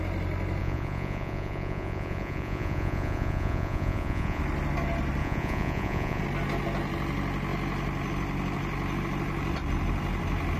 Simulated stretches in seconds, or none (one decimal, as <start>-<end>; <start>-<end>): 0.6-4.4; 5.2-6.2